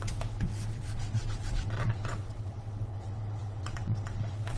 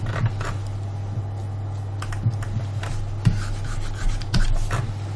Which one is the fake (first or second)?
first